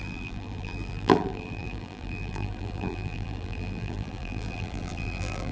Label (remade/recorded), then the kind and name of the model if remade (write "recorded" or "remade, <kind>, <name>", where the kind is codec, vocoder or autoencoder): remade, vocoder, BigVGAN v2